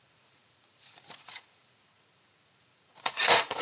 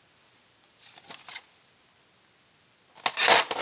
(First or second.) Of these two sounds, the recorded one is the second